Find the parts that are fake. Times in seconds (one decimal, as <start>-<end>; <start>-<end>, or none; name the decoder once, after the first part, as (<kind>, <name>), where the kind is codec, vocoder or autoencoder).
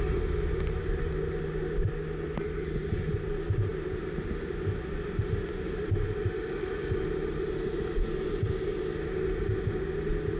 none